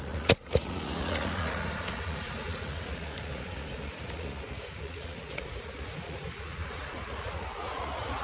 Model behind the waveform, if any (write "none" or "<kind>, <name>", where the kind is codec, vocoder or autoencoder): vocoder, Vocos